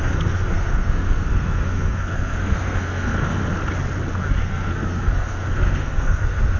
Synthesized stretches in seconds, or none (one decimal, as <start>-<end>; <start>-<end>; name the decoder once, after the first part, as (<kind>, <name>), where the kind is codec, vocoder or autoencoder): 0.0-3.4 (codec, SNAC); 4.4-6.6